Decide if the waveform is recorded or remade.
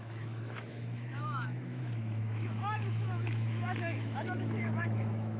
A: remade